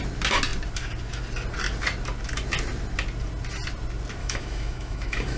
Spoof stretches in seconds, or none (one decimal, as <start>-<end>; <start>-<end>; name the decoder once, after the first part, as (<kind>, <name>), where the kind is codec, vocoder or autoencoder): 4.2-5.4 (autoencoder, DAC-VAE)